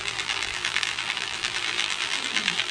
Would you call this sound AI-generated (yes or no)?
yes